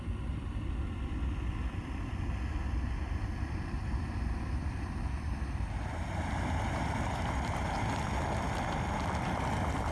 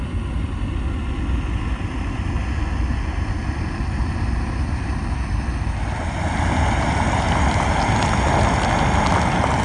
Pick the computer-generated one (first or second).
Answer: first